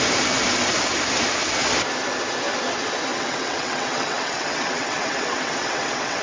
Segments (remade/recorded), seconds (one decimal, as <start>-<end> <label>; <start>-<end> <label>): 0.0-3.1 recorded; 3.1-6.2 remade